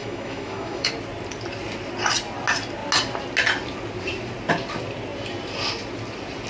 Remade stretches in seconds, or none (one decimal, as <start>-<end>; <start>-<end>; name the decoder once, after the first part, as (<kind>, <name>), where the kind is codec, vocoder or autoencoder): 0.0-0.9 (autoencoder, DAC-VAE)

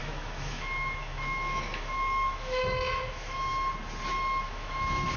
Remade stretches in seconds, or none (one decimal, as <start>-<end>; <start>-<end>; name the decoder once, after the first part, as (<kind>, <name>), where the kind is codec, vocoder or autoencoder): 0.0-3.5 (autoencoder, DAC-VAE); 4.1-5.2

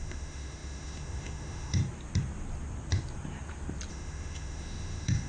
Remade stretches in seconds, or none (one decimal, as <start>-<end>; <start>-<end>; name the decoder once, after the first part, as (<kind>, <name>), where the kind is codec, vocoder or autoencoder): 0.0-1.8 (autoencoder, DAC-VAE); 3.9-5.3